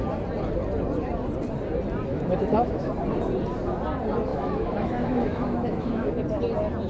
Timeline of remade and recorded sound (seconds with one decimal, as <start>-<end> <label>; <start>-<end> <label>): 0.0-2.1 recorded; 2.1-2.9 remade; 2.9-4.3 recorded; 4.3-6.1 remade; 6.1-6.9 recorded